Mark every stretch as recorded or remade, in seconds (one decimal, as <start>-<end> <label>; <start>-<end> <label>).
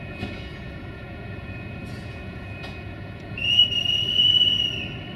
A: 0.0-3.6 remade; 3.6-5.2 recorded